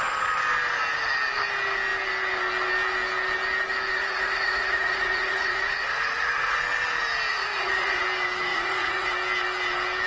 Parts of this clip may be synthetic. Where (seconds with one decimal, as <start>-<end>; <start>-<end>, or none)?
3.9-6.6; 7.3-8.0; 8.5-9.1